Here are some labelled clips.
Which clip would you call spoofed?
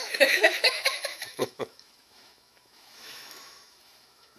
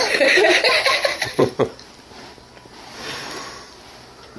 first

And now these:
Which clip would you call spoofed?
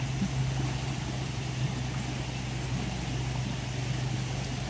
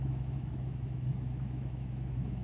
second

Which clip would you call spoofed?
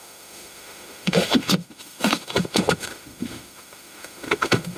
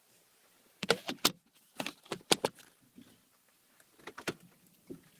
first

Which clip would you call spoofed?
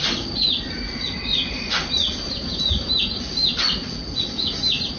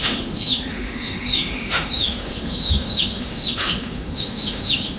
second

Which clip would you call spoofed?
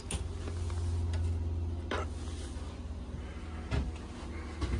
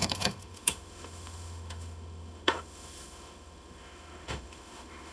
second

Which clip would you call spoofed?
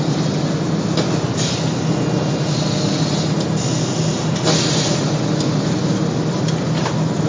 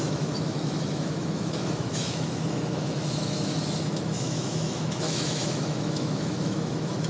second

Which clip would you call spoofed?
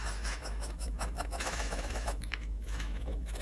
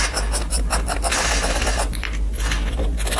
first